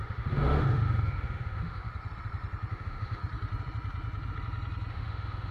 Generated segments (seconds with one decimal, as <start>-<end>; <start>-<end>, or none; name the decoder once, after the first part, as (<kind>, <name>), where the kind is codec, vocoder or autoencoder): 0.0-1.9 (autoencoder, DAC-VAE); 2.7-3.2; 4.9-5.5